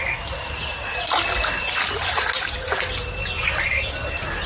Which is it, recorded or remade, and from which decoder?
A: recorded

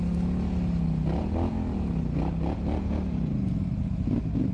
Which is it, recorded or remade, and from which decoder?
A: recorded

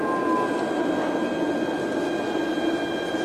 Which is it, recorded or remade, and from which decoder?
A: recorded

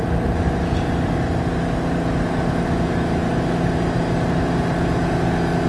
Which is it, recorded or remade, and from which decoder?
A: recorded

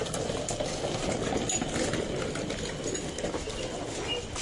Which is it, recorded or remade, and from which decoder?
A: recorded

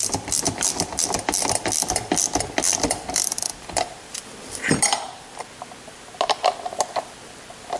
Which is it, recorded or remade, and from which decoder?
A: recorded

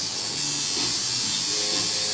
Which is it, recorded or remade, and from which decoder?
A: recorded